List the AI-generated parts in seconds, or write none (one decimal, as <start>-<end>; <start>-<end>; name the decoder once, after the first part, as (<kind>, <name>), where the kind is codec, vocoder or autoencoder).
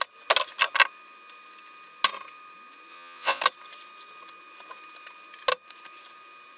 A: 2.9-3.4 (vocoder, Vocos)